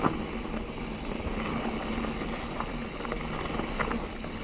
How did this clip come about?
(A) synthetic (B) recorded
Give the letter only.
B